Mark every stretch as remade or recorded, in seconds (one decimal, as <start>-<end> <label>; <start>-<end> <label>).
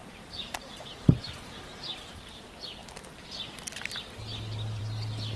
0.0-2.4 remade; 2.4-5.4 recorded